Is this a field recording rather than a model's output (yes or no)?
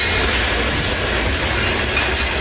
yes